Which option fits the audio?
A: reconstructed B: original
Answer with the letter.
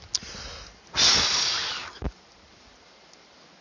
B